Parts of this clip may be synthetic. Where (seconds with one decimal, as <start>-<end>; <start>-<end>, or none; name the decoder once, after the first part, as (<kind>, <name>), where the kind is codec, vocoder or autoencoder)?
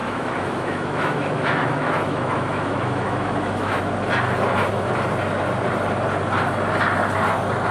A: 0.0-3.8 (autoencoder, DAC-VAE)